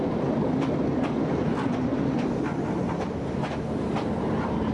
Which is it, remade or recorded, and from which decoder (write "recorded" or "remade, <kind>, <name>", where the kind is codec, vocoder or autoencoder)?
recorded